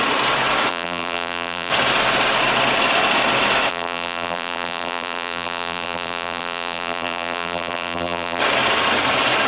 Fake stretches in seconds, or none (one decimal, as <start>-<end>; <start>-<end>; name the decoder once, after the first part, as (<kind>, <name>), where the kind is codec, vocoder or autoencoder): 0.7-1.7 (vocoder, BigVGAN v2); 3.7-8.4